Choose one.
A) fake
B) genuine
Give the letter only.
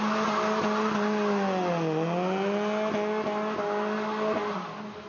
B